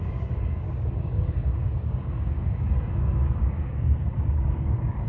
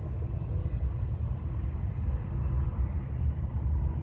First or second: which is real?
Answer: second